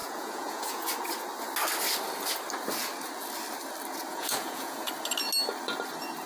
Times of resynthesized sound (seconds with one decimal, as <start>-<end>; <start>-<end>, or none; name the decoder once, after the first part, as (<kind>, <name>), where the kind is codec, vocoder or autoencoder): 0.0-0.9 (vocoder, Vocos); 4.1-4.9

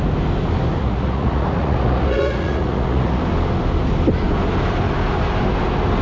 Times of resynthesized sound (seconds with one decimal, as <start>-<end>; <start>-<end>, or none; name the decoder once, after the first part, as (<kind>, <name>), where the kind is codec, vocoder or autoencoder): 0.8-3.2 (vocoder, Vocos)

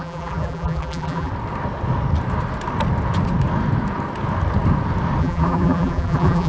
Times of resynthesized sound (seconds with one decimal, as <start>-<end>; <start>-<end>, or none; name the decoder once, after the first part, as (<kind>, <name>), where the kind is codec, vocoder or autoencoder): 0.0-1.3 (vocoder, BigVGAN v2); 5.2-6.5

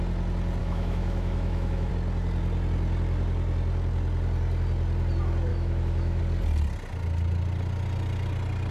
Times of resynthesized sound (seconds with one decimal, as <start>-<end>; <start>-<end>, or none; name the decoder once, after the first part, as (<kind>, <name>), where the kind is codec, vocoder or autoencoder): 0.6-1.9 (autoencoder, DAC-VAE); 5.5-6.2